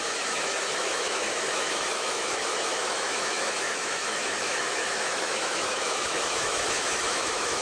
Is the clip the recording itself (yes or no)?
no